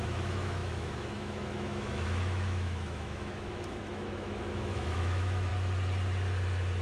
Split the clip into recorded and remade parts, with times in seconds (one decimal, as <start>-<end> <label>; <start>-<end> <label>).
0.0-5.5 remade; 5.5-6.8 recorded